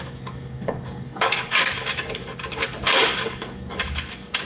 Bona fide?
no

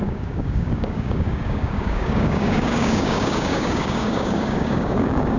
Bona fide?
no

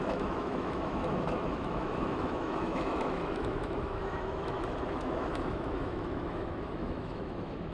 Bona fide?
no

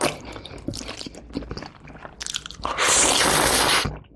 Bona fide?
yes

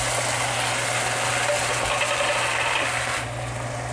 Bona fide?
yes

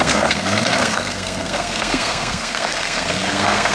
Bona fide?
no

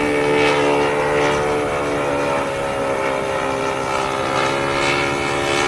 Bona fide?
yes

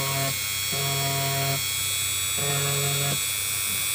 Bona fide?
yes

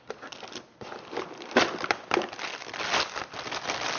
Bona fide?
yes